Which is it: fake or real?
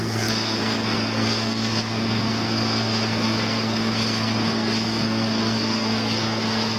fake